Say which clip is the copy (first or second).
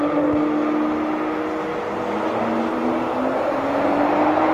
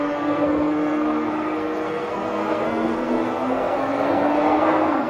second